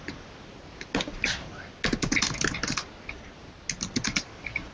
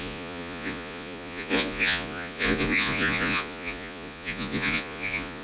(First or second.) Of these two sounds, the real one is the first